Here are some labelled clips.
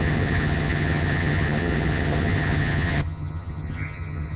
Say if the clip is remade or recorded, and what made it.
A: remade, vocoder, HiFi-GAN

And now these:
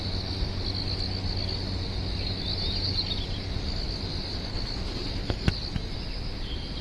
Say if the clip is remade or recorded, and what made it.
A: recorded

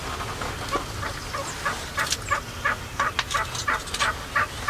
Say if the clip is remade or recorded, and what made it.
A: recorded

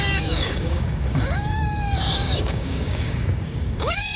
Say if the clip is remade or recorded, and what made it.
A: remade, codec, DAC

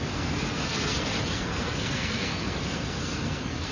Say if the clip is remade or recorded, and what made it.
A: remade, codec, SNAC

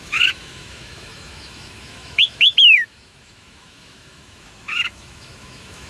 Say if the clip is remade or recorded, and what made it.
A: remade, autoencoder, DAC-VAE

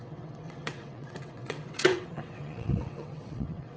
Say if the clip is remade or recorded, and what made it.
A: remade, vocoder, WaveNeXt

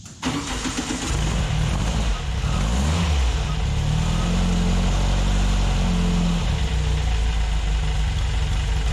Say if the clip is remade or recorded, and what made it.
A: recorded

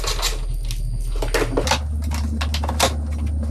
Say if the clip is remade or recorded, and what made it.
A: recorded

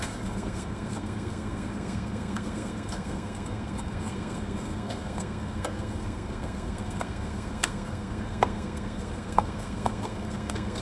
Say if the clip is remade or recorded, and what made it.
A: remade, codec, SNAC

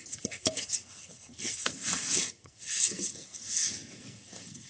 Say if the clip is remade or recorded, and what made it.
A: remade, codec, SNAC